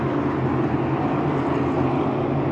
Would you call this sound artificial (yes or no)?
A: no